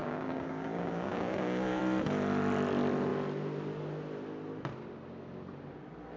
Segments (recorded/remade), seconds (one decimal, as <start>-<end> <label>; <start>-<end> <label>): 0.0-1.8 remade; 1.8-6.2 recorded